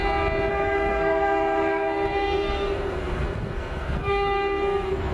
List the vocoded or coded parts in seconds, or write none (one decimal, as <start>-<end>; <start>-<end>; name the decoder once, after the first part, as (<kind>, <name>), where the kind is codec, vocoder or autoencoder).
0.5-5.1 (codec, SNAC)